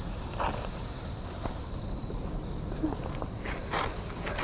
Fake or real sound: real